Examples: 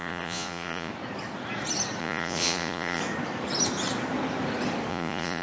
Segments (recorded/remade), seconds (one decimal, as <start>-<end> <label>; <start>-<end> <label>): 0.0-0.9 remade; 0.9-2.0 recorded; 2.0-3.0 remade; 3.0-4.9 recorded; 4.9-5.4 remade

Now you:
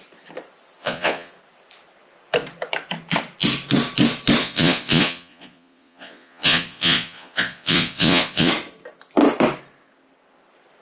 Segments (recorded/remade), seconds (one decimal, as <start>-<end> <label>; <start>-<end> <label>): 0.0-0.8 recorded; 0.8-1.3 remade; 1.3-4.4 recorded; 4.4-8.5 remade; 8.5-10.8 recorded

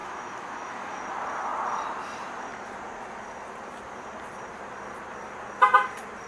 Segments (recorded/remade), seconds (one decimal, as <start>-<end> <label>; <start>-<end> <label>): 0.0-1.0 remade; 1.0-6.3 recorded